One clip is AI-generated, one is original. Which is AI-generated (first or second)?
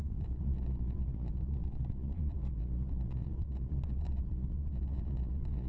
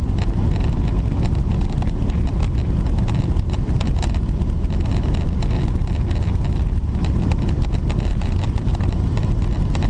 first